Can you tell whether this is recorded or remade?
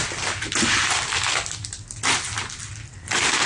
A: recorded